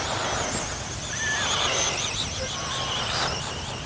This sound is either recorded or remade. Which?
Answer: recorded